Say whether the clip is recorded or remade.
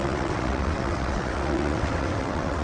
remade